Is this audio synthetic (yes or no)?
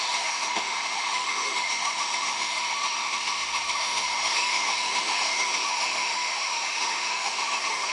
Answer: yes